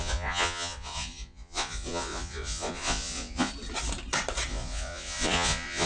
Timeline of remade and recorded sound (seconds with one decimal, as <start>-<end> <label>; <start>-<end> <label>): 0.0-3.5 remade; 3.5-4.5 recorded; 4.5-5.9 remade